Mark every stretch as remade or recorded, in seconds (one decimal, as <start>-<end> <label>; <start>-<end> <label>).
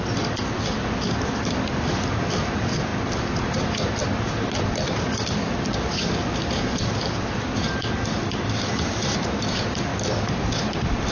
0.0-11.1 remade